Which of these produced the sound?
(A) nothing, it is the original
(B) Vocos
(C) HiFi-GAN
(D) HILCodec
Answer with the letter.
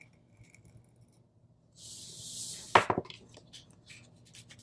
A